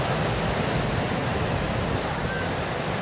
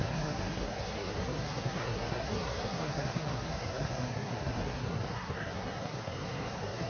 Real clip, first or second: first